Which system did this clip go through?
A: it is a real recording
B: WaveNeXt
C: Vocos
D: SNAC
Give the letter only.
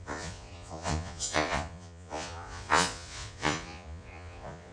C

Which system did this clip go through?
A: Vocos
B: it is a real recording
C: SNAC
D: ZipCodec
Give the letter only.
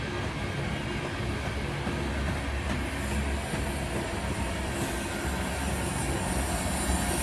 B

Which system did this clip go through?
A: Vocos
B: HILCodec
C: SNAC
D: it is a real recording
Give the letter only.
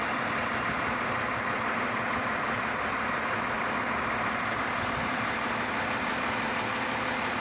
D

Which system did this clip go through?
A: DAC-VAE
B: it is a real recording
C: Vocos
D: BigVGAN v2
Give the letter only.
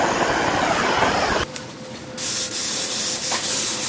B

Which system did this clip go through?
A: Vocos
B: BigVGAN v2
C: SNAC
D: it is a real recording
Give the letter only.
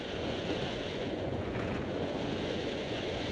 A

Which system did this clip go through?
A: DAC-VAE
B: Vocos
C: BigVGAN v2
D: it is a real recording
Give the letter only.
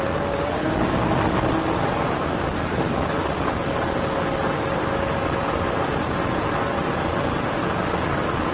D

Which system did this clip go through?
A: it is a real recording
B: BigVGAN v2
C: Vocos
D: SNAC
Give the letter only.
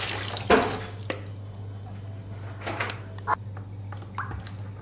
A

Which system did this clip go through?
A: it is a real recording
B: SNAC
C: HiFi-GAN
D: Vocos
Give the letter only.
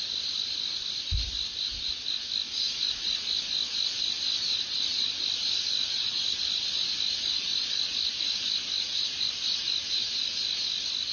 A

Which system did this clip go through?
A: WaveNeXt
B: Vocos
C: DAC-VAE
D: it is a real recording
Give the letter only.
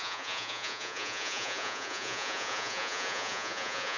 B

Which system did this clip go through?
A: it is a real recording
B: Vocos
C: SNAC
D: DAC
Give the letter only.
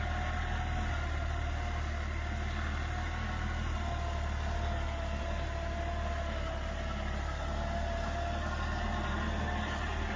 A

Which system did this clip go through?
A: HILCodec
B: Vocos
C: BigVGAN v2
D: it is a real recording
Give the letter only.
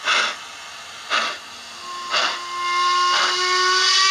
D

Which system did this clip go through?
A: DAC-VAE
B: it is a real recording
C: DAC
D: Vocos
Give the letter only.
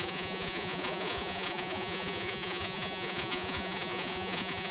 D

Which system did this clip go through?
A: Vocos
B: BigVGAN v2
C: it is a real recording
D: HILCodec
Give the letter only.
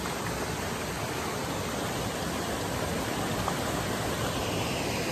C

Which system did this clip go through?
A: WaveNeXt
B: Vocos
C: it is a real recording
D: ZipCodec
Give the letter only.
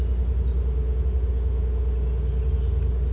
C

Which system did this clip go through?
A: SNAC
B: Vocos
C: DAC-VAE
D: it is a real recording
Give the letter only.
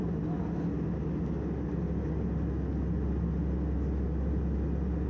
D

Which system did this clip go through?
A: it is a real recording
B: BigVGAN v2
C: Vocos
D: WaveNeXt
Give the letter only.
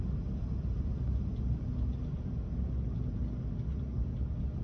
A